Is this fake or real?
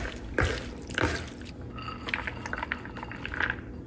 real